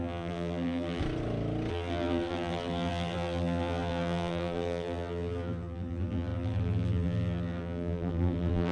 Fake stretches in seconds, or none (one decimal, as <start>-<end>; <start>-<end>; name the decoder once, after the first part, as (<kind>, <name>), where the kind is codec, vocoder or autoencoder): 0.0-1.0 (vocoder, BigVGAN v2); 1.7-8.7